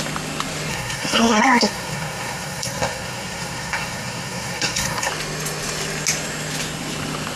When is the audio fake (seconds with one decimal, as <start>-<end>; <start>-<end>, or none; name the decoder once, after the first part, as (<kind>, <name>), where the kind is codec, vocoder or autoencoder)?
0.7-5.1 (codec, SNAC)

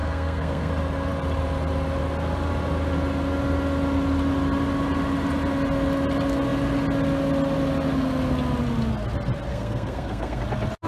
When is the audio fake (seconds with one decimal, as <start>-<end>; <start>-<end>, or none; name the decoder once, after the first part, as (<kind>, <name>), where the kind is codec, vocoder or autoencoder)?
0.0-0.7 (codec, SNAC); 9.5-10.4

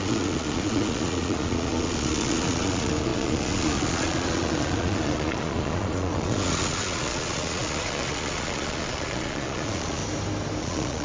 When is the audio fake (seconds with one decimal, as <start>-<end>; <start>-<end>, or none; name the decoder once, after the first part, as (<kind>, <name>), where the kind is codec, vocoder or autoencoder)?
0.0-10.0 (vocoder, Vocos); 10.6-11.0

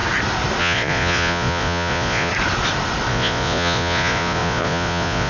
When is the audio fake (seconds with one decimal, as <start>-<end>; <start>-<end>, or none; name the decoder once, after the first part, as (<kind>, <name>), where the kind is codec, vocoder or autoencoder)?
0.6-2.3 (vocoder, Vocos); 3.1-5.3